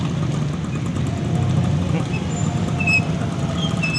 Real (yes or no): yes